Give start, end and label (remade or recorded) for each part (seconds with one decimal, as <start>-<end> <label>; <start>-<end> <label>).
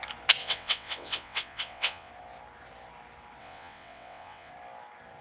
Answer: 0.0-0.4 recorded; 0.4-2.1 remade; 2.1-3.4 recorded; 3.4-4.5 remade; 4.5-5.2 recorded